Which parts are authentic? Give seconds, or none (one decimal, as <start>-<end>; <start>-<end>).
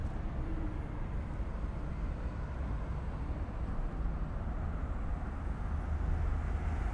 0.0-6.9